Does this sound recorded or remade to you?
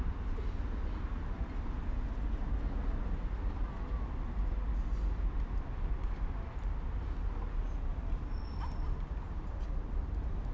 recorded